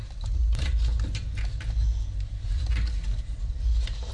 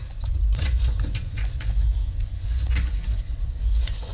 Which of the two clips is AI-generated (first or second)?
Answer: second